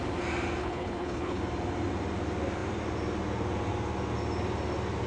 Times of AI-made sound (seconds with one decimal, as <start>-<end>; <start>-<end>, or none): 0.6-1.4